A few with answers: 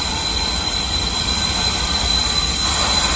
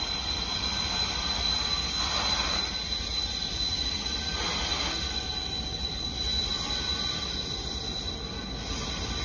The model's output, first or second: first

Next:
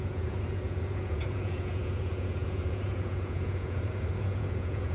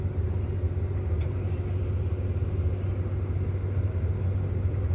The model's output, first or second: first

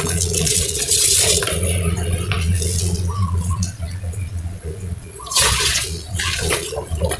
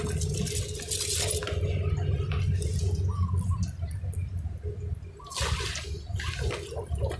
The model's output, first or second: first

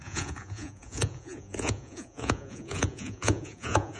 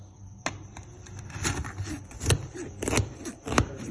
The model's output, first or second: first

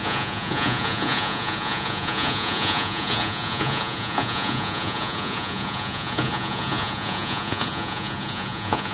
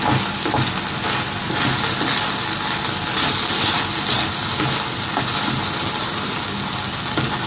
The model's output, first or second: first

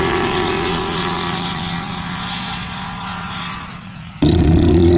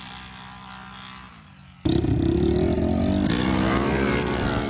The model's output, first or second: first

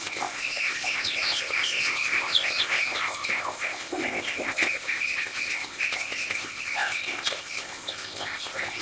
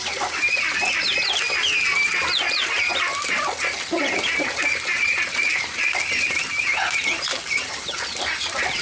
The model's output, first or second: first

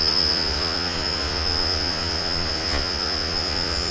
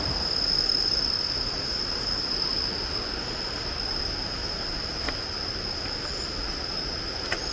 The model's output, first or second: first